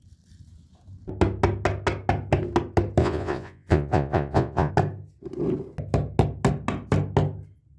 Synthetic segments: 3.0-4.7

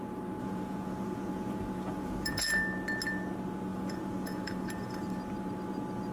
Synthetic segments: 0.4-2.5; 3.7-5.0

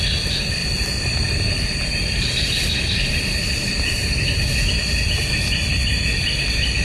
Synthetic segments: none